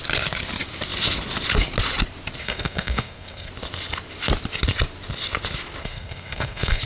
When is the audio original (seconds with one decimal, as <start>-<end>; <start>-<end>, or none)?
0.0-2.4; 3.5-5.8